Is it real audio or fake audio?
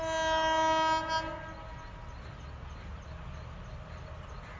real